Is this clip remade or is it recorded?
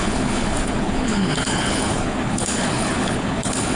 remade